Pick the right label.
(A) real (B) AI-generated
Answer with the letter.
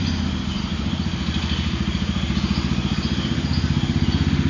A